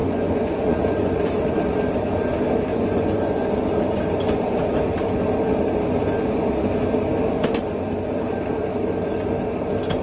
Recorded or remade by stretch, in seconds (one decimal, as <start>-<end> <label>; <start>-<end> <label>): 0.0-1.1 remade; 1.1-2.7 recorded; 2.7-3.5 remade; 3.5-10.0 recorded